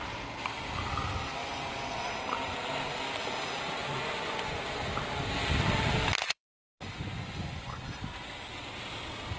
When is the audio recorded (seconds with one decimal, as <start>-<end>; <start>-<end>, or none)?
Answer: 0.0-1.4; 2.0-3.9; 4.6-6.2; 7.8-9.4